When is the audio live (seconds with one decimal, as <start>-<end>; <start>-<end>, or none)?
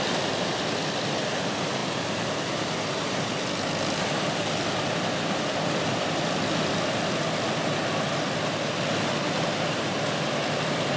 0.0-11.0